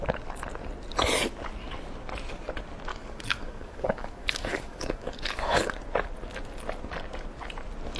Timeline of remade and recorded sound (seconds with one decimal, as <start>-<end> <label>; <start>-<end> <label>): 0.0-2.9 recorded; 2.9-5.8 remade; 5.8-8.0 recorded